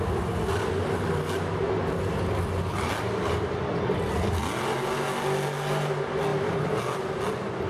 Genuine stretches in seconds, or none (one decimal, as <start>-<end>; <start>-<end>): 0.0-7.7